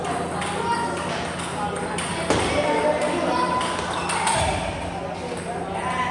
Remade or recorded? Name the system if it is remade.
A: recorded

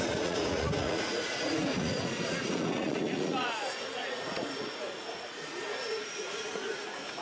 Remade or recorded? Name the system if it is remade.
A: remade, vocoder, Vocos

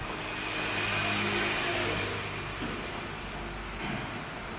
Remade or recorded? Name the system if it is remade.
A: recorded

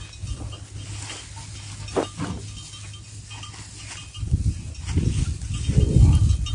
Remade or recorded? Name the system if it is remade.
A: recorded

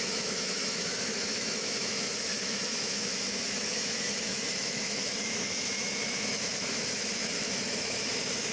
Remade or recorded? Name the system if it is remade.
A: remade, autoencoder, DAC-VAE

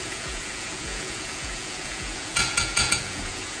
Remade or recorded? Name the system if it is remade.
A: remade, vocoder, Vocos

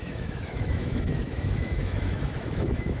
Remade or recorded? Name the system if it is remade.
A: remade, autoencoder, DAC-VAE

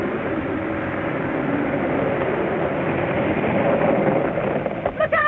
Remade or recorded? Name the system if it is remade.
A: remade, vocoder, BigVGAN v2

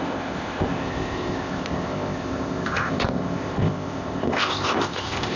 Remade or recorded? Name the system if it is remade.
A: remade, codec, ZipCodec